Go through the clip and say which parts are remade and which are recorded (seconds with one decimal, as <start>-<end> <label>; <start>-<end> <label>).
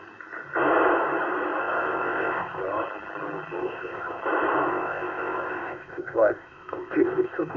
0.0-1.6 recorded; 1.6-2.6 remade; 2.6-3.6 recorded; 3.6-4.2 remade; 4.2-4.7 recorded; 4.7-7.6 remade